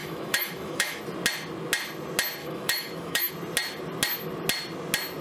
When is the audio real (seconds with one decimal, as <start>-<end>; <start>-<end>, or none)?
1.0-2.4; 3.3-5.2